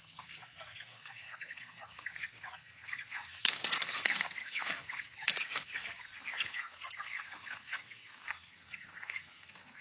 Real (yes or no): no